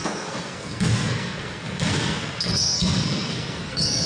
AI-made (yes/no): yes